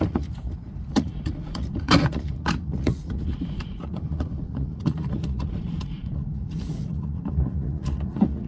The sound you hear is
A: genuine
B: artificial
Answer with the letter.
B